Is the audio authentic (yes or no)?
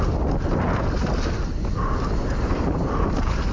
yes